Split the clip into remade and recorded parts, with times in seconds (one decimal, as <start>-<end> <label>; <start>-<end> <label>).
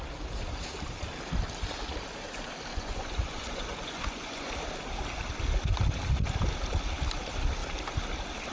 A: 0.0-2.7 recorded; 2.7-4.5 remade; 4.5-8.5 recorded